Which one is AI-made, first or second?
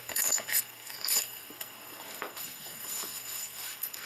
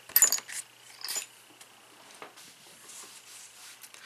first